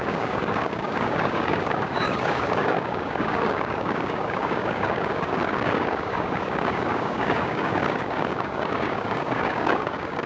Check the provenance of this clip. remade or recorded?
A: remade